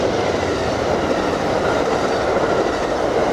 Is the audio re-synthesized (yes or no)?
no